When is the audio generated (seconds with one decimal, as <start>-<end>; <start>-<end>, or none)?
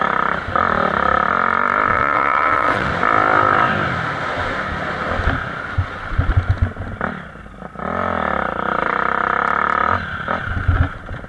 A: 1.9-2.9